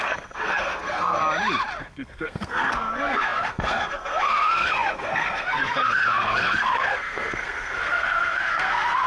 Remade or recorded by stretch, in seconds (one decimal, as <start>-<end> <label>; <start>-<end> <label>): 0.0-1.2 remade; 1.2-1.8 recorded; 1.8-9.1 remade